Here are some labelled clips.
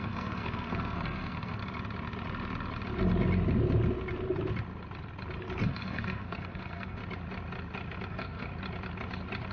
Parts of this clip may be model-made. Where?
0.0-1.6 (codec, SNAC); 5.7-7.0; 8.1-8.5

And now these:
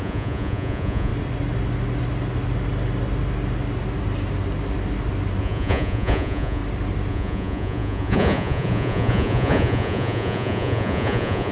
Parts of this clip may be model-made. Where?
0.0-1.1 (vocoder, Vocos); 5.4-6.6; 7.1-11.5

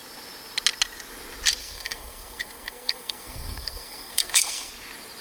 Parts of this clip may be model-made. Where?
1.6-4.7 (codec, SNAC)